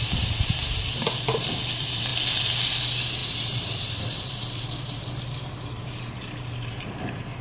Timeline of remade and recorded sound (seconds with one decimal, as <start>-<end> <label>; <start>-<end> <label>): 0.0-2.1 remade; 2.1-2.7 recorded; 2.7-7.4 remade